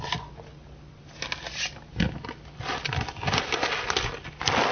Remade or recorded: recorded